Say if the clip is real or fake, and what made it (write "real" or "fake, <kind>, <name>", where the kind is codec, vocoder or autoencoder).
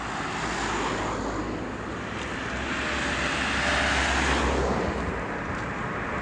real